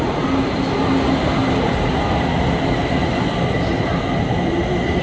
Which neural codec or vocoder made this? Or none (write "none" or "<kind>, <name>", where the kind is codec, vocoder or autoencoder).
none